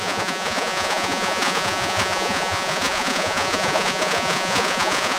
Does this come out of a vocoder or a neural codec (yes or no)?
yes